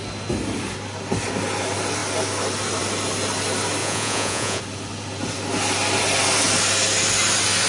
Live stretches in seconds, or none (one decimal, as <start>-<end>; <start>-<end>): 0.0-3.8; 4.6-7.7

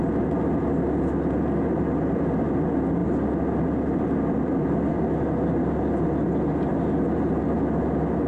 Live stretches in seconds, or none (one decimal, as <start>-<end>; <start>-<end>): 0.0-8.3

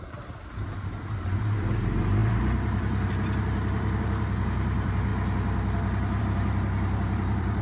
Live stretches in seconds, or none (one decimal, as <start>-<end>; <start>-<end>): 5.1-6.2

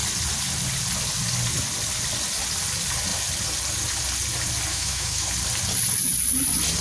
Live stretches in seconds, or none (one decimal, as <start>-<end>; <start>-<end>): 0.0-4.7; 5.3-6.8

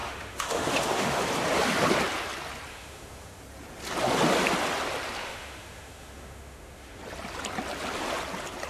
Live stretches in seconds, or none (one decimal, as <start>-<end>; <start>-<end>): 1.2-2.7; 3.4-5.2; 7.0-8.7

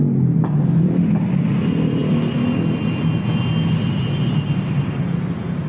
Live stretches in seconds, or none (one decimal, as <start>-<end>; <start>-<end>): 0.0-5.7

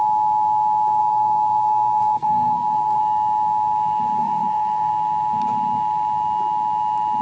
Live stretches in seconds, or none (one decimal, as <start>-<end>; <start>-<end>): 0.0-1.0; 3.0-4.2; 4.9-7.2

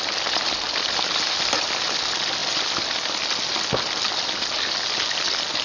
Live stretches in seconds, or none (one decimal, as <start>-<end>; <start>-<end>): 0.0-5.6